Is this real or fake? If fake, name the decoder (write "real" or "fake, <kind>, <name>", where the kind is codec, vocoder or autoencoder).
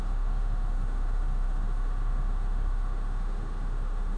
fake, autoencoder, DAC-VAE